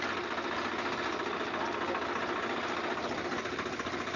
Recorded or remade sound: recorded